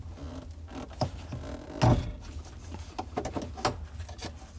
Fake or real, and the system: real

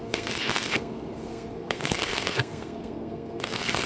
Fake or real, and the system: fake, codec, SNAC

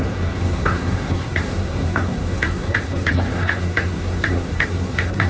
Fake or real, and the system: fake, codec, SNAC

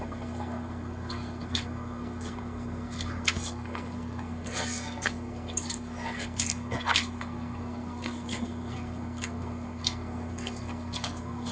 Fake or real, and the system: fake, codec, SNAC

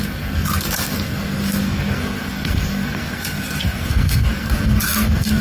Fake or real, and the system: fake, codec, SNAC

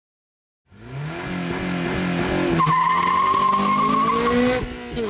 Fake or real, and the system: real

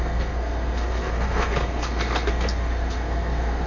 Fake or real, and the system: fake, codec, SNAC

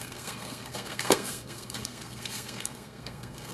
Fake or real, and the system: fake, codec, SNAC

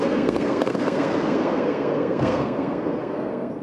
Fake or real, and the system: fake, codec, SNAC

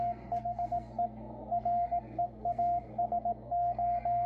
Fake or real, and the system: fake, codec, SNAC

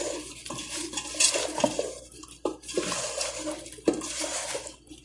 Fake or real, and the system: real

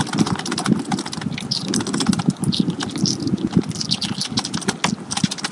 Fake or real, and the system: real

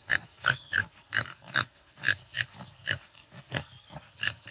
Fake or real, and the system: fake, codec, SNAC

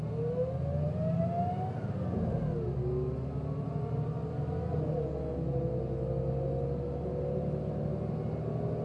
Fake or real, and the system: real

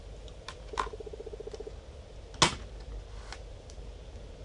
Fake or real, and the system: real